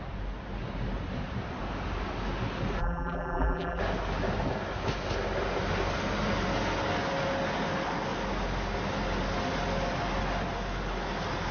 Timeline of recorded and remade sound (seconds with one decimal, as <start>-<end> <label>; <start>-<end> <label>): 0.0-2.8 recorded; 2.8-3.8 remade; 3.8-11.5 recorded

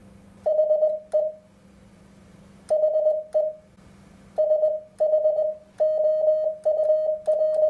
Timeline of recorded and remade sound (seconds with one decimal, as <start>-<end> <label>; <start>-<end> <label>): 0.0-1.9 remade; 1.9-7.7 recorded

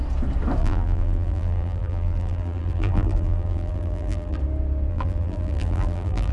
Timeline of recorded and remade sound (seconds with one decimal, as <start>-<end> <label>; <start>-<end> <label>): 0.0-0.6 recorded; 0.6-4.4 remade; 4.4-4.9 recorded; 4.9-6.3 remade